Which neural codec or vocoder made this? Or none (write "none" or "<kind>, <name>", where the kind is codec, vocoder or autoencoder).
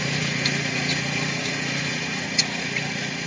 vocoder, Vocos